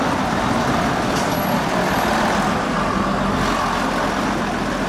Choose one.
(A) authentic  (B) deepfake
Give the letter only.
A